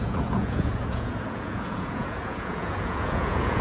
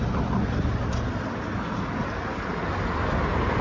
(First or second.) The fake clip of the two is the first